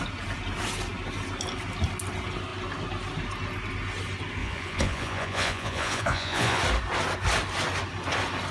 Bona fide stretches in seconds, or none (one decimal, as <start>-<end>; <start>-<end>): 0.0-4.4; 6.6-8.5